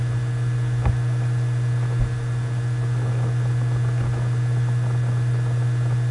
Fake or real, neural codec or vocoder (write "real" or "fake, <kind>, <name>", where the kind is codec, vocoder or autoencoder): real